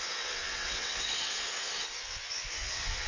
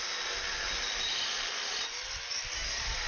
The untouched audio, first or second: second